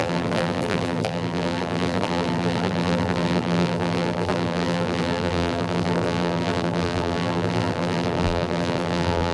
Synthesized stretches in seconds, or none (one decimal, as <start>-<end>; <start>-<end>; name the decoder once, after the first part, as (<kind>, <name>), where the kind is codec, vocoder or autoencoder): 0.0-9.3 (vocoder, BigVGAN v2)